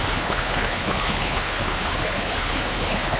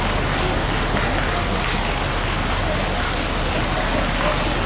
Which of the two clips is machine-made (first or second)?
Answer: first